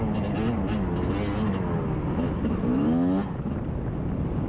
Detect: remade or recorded recorded